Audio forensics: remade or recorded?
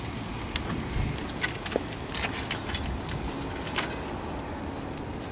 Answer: recorded